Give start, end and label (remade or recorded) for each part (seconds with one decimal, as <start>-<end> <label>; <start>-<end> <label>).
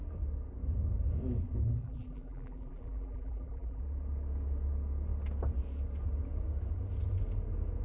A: 0.0-1.8 recorded; 1.8-3.8 remade; 3.8-7.8 recorded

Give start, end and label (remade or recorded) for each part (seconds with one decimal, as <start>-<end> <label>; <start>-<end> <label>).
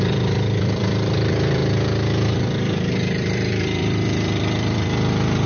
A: 0.0-1.6 remade; 1.6-2.3 recorded; 2.3-5.5 remade